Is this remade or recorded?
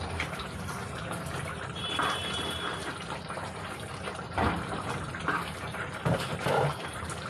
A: remade